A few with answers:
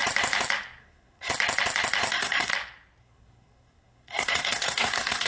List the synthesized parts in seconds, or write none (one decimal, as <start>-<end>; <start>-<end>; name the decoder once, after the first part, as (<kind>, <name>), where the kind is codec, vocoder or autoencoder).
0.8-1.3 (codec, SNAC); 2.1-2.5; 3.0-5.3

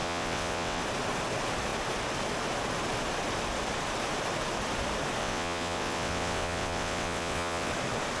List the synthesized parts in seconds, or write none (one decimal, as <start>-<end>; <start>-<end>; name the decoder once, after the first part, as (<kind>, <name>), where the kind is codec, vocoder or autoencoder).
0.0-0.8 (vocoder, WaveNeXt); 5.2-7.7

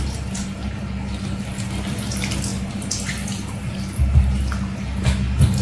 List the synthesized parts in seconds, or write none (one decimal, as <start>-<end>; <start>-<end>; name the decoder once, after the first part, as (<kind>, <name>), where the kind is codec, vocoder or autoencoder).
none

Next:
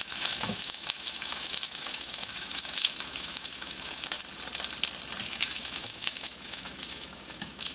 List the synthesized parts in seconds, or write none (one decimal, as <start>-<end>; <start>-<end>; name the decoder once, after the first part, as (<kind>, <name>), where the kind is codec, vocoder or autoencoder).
0.0-4.2 (autoencoder, DAC-VAE); 5.3-7.7

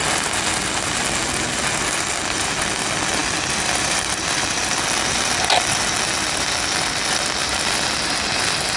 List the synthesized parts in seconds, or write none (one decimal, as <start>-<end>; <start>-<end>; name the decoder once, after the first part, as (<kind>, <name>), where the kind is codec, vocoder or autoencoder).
none